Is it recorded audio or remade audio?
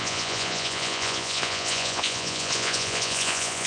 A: remade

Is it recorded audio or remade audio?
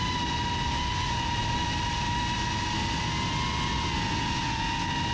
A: recorded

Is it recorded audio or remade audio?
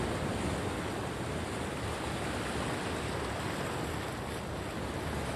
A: recorded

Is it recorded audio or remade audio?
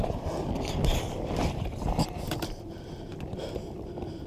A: recorded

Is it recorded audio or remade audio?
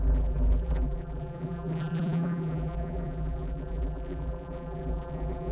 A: remade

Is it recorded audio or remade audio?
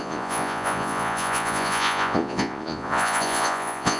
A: remade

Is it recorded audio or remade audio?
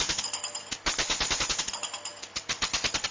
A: recorded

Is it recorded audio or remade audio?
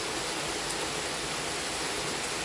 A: recorded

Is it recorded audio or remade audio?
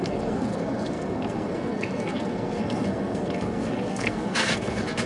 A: remade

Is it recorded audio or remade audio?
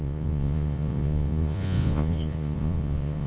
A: remade